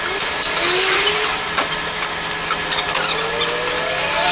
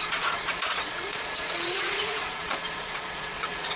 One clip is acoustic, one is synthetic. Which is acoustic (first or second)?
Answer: first